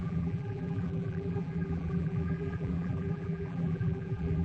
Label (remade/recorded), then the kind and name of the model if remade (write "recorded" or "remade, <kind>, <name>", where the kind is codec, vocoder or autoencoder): remade, vocoder, BigVGAN v2